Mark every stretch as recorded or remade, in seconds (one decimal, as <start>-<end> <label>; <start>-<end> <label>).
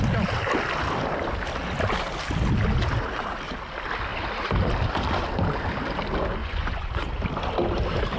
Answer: 0.0-6.4 recorded; 6.4-6.9 remade; 6.9-8.2 recorded